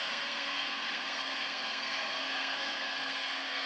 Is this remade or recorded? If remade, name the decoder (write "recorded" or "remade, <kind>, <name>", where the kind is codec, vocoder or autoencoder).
remade, codec, SNAC